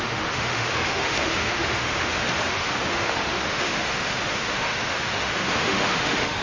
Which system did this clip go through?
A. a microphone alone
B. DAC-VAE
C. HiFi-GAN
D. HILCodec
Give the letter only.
B